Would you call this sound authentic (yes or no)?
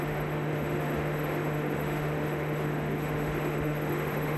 no